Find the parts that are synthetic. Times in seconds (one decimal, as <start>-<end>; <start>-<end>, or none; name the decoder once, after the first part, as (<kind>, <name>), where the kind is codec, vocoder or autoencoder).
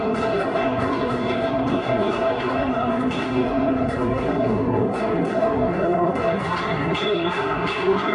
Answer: 0.0-8.1 (codec, SNAC)